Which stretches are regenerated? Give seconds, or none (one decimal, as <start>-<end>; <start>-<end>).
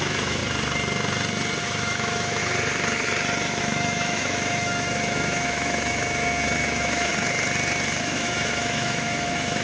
0.0-0.4; 1.6-2.4; 3.6-7.1; 8.0-9.6